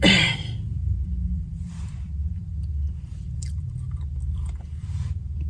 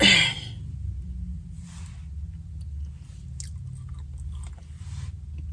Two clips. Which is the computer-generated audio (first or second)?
first